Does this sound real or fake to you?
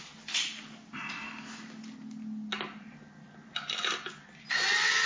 real